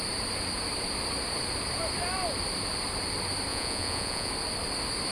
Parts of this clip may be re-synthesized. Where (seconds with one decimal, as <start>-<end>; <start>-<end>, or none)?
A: 3.5-4.3